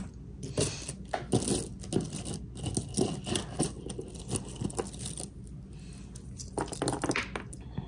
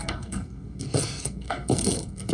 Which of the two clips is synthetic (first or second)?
second